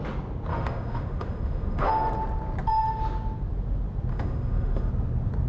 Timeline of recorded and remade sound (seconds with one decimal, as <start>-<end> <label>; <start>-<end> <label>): 0.0-0.5 recorded; 0.5-1.9 remade; 1.9-4.1 recorded; 4.1-4.9 remade; 4.9-5.5 recorded